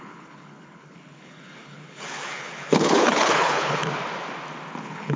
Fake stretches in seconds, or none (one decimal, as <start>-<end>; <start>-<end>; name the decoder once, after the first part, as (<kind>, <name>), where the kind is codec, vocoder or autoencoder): 0.0-3.8 (codec, HILCodec); 4.8-5.2